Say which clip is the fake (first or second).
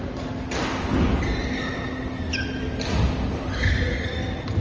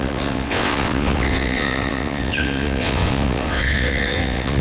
second